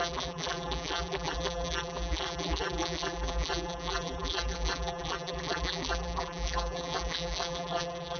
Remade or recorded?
remade